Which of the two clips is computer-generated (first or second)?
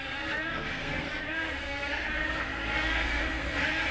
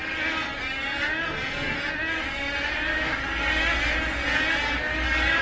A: first